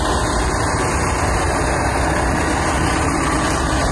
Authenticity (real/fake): real